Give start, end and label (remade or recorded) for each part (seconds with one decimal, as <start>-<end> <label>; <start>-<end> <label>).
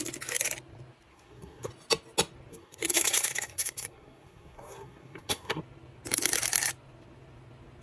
0.0-1.1 recorded; 1.1-1.7 remade; 1.7-2.5 recorded; 2.5-5.6 remade; 5.6-7.8 recorded